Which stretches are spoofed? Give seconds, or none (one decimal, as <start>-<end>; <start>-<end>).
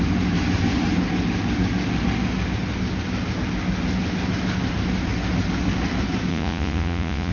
6.3-7.3